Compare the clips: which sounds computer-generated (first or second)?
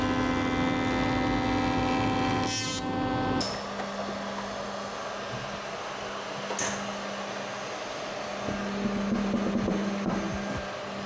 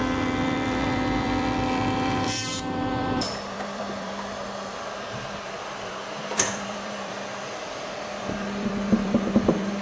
second